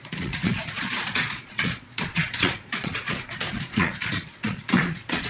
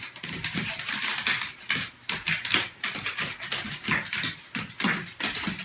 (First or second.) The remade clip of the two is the first